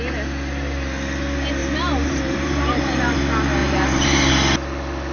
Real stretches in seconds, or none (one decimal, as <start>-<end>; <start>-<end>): 0.0-1.6; 3.2-3.6; 4.3-5.1